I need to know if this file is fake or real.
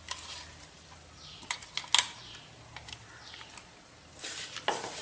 real